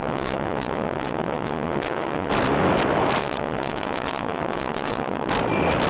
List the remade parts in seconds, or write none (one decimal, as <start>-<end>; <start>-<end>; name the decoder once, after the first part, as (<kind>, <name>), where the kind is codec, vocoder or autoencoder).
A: 0.0-2.3 (vocoder, WaveNeXt); 3.2-5.3